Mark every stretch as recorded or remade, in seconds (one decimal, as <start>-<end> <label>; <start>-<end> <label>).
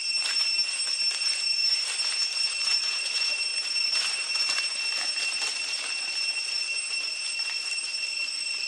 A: 0.0-8.7 recorded